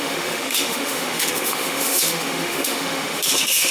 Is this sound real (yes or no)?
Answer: no